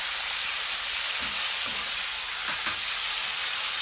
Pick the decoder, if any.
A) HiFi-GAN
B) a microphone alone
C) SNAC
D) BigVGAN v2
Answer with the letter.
B